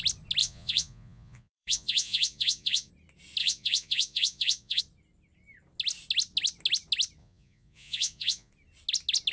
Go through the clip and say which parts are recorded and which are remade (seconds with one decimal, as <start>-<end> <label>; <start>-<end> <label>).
0.0-0.4 recorded; 0.4-2.9 remade; 2.9-3.4 recorded; 3.4-4.8 remade; 4.8-7.2 recorded; 7.2-8.5 remade; 8.5-9.3 recorded